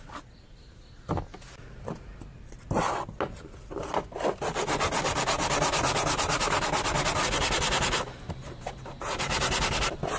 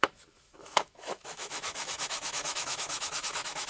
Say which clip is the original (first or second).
first